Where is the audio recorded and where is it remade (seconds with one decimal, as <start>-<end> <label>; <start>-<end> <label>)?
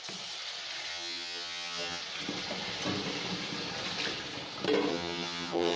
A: 0.0-0.9 recorded; 0.9-2.0 remade; 2.0-4.9 recorded; 4.9-5.8 remade